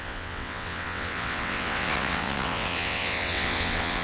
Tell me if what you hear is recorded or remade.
remade